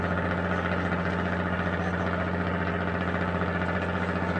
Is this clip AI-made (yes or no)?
no